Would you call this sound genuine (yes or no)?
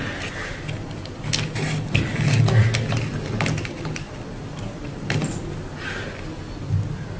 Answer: yes